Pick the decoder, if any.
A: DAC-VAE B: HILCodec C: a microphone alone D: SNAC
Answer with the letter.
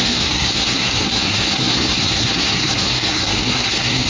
D